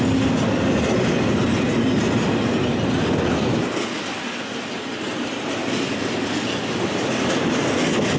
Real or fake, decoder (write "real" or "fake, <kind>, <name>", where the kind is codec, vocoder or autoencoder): real